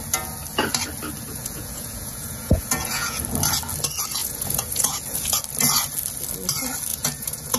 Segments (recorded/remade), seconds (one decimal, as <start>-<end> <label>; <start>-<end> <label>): 0.0-1.3 recorded; 1.3-3.2 remade; 3.2-4.2 recorded; 4.2-5.4 remade; 5.4-6.9 recorded; 6.9-7.6 remade